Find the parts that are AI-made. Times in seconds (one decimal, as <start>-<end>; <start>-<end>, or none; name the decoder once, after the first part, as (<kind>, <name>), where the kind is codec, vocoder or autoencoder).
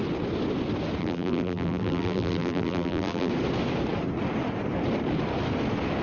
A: 1.0-3.3 (vocoder, BigVGAN v2)